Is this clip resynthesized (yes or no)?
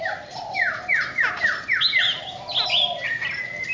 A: no